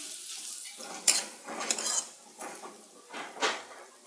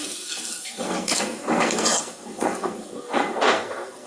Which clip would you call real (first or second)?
first